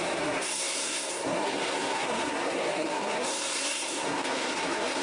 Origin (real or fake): fake